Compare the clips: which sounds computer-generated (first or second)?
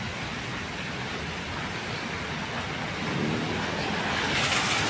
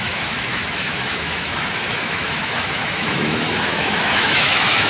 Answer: second